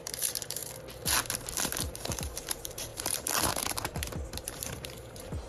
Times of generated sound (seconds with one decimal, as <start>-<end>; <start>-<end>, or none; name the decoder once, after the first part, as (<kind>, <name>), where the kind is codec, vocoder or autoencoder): 0.0-0.6 (vocoder, BigVGAN v2); 1.8-5.5